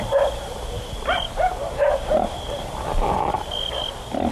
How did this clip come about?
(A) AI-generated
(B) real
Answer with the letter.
B